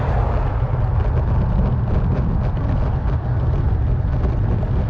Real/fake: real